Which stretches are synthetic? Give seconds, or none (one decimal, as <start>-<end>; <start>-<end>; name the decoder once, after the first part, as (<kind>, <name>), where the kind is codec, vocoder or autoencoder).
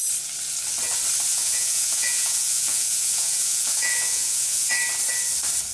1.3-4.7 (vocoder, Vocos)